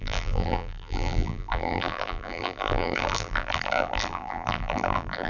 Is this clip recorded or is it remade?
remade